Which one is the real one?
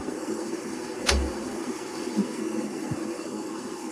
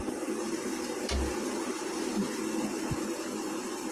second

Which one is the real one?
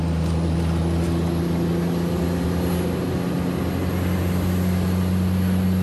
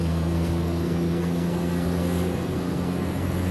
first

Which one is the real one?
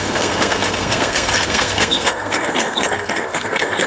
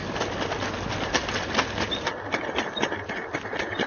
second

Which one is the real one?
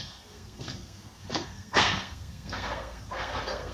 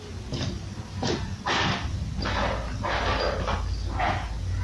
second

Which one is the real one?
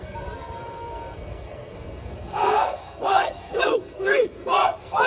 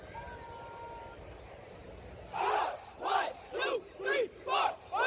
second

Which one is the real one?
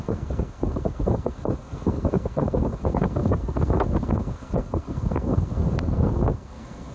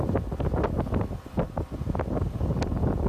second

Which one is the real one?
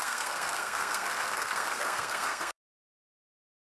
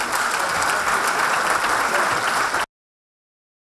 second